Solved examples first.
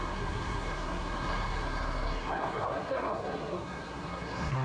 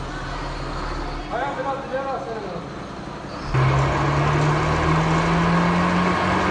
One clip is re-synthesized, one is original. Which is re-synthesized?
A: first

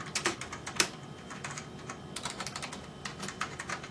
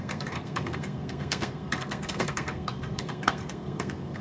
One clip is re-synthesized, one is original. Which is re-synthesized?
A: second